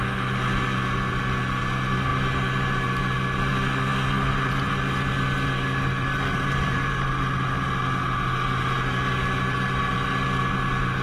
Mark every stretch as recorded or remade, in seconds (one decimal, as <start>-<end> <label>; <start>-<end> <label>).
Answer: 0.0-11.0 recorded